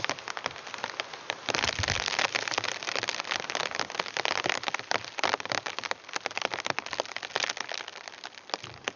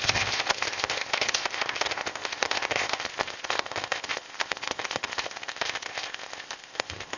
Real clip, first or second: first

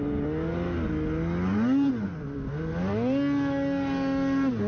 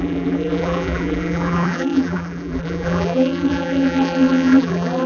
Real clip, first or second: first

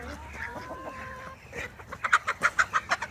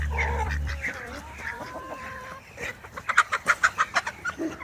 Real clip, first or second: first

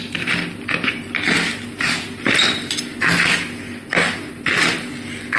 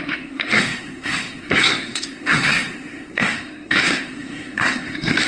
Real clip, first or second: first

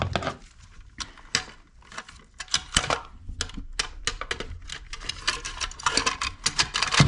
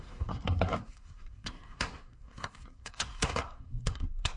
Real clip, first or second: first